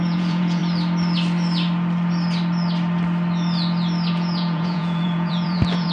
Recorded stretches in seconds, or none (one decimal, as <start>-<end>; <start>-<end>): 0.6-4.1